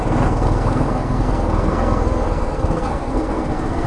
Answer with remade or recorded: remade